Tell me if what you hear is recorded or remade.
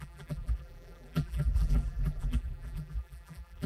remade